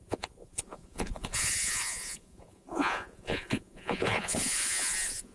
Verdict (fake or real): fake